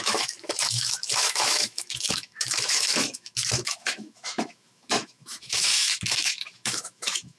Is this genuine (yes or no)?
no